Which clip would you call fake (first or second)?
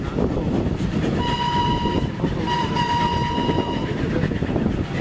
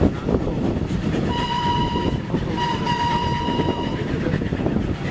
second